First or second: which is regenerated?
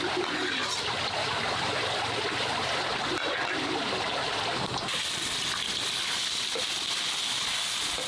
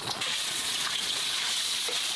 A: second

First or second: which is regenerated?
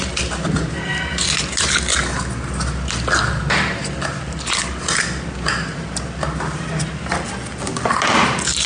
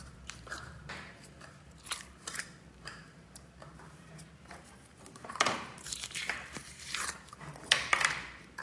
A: second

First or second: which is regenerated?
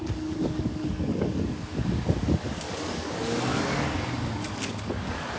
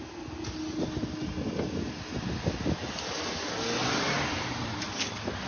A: first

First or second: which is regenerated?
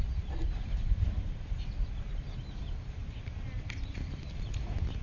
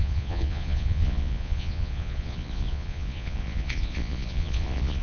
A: second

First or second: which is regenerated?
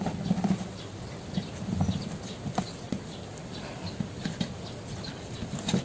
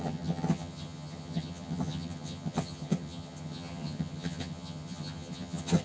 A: second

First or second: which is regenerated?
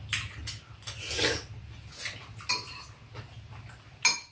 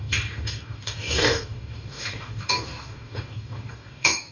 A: second